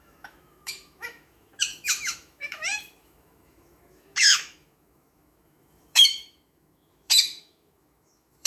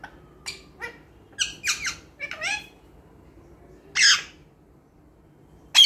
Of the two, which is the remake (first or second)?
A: first